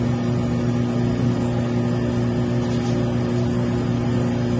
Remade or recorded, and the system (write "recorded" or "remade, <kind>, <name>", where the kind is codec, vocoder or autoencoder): recorded